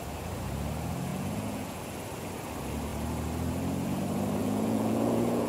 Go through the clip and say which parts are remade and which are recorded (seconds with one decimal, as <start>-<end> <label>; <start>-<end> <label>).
0.0-1.1 recorded; 1.1-1.8 remade; 1.8-4.4 recorded; 4.4-5.5 remade